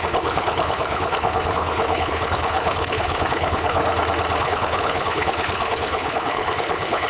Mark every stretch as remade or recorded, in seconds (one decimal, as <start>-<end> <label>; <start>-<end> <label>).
0.0-3.9 remade; 3.9-4.4 recorded; 4.4-7.1 remade